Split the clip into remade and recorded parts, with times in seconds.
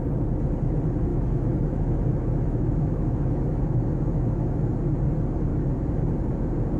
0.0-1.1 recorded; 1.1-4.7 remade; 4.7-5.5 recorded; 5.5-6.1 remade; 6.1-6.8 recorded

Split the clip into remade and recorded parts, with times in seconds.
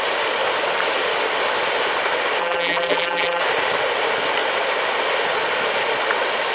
0.0-2.4 recorded; 2.4-3.4 remade; 3.4-6.5 recorded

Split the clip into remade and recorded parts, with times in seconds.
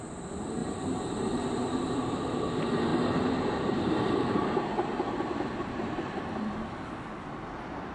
0.0-0.6 recorded; 0.6-2.2 remade; 2.2-2.9 recorded; 2.9-6.5 remade; 6.5-7.9 recorded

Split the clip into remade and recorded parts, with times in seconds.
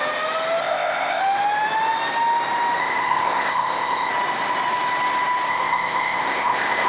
0.0-0.6 recorded; 0.6-1.2 remade; 1.2-2.8 recorded; 2.8-4.1 remade; 4.1-5.5 recorded; 5.5-6.9 remade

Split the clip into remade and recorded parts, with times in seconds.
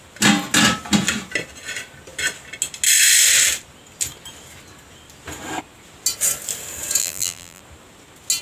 0.0-7.0 recorded; 7.0-7.6 remade; 7.6-8.4 recorded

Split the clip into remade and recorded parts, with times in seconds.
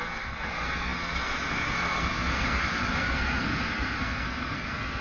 0.0-5.0 remade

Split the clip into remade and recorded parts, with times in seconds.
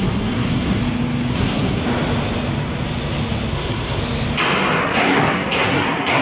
0.0-0.8 remade; 0.8-1.3 recorded; 1.3-1.8 remade; 1.8-3.5 recorded; 3.5-4.0 remade; 4.0-4.8 recorded; 4.8-6.2 remade